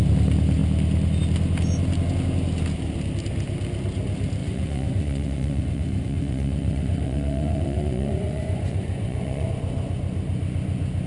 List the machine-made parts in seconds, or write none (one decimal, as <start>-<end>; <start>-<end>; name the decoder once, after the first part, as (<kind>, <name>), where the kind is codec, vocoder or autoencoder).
4.4-9.5 (vocoder, Vocos)